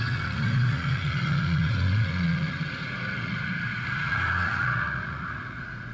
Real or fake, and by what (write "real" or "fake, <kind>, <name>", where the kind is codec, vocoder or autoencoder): fake, vocoder, Vocos